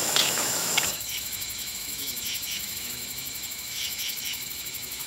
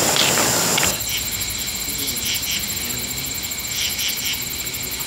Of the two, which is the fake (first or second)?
first